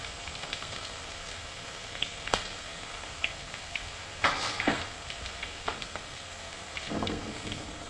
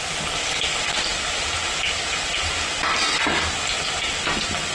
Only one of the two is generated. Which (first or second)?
first